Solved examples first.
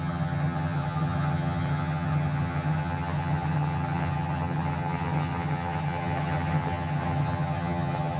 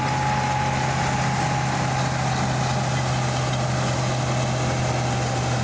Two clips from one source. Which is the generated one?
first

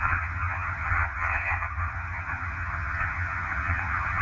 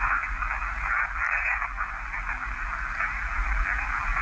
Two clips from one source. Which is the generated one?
first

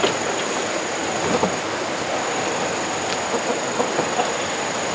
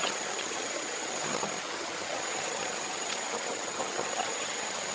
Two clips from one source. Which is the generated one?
second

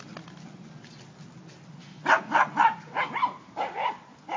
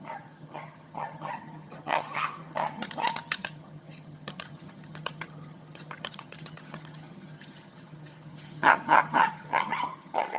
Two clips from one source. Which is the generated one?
second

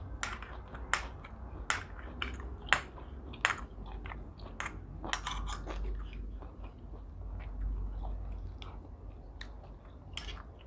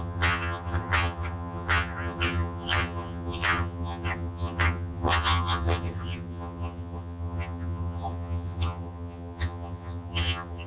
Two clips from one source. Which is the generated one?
second